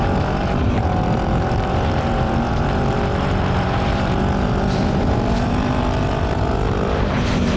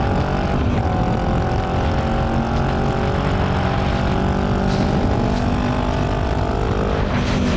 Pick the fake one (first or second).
first